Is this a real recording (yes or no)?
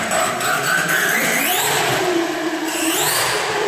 yes